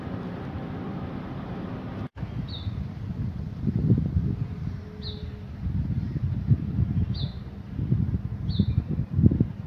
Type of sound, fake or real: fake